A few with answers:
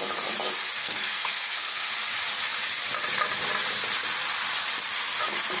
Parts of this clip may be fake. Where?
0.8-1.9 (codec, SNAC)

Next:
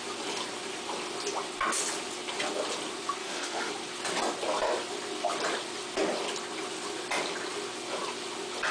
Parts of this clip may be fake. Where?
3.2-3.7 (autoencoder, DAC-VAE)